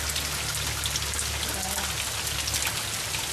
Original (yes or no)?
yes